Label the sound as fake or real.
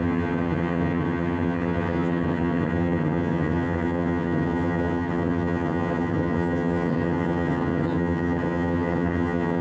fake